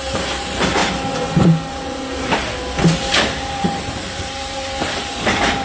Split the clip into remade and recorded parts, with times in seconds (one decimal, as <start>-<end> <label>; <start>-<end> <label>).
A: 0.0-0.8 remade; 0.8-1.7 recorded; 1.7-2.4 remade; 2.4-3.3 recorded; 3.3-5.6 remade